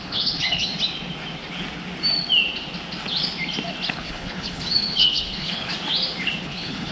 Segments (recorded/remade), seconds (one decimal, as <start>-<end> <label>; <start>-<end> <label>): 0.0-0.7 remade; 0.7-3.9 recorded; 3.9-5.7 remade; 5.7-6.4 recorded; 6.4-6.9 remade